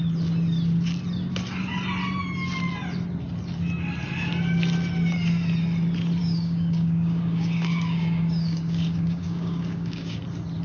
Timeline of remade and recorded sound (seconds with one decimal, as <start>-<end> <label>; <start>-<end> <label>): 0.0-6.2 recorded; 6.2-10.2 remade; 10.2-10.6 recorded